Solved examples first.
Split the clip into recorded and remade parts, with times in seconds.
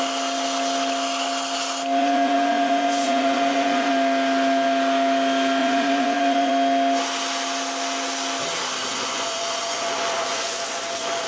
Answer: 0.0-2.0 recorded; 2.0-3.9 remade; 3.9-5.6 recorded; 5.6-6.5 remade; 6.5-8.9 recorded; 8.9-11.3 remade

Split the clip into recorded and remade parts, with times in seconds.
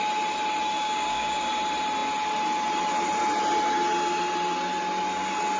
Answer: 0.0-0.8 recorded; 0.8-1.5 remade; 1.5-5.6 recorded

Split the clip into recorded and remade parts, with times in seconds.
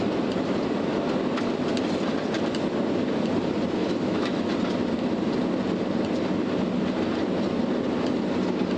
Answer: 0.0-3.8 recorded; 3.8-4.5 remade; 4.5-8.8 recorded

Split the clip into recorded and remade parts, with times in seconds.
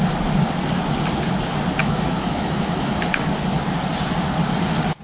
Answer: 0.0-1.8 recorded; 1.8-2.9 remade; 2.9-5.0 recorded